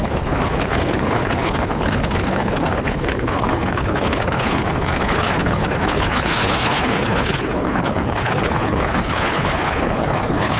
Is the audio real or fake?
fake